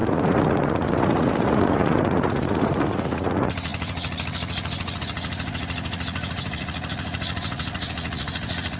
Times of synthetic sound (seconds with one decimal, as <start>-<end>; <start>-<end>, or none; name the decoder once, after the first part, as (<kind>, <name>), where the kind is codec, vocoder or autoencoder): 0.0-8.8 (vocoder, Vocos)